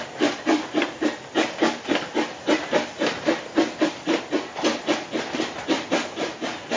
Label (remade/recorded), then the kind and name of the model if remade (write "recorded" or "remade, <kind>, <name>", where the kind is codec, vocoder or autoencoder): recorded